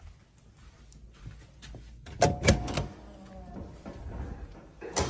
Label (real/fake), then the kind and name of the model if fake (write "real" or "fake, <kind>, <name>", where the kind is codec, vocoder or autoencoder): real